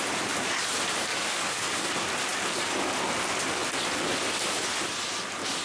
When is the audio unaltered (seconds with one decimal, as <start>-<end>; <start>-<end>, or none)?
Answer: 0.0-1.1; 1.9-5.6